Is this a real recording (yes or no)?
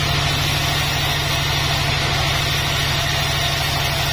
yes